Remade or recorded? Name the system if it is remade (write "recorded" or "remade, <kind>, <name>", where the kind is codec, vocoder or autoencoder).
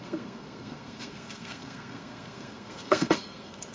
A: remade, codec, SNAC